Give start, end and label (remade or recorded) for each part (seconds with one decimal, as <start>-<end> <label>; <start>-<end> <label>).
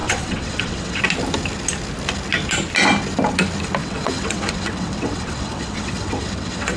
0.0-1.0 remade; 1.0-3.8 recorded; 3.8-6.8 remade